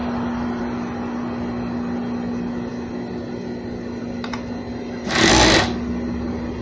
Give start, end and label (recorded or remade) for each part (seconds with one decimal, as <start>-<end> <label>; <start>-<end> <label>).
0.0-6.6 recorded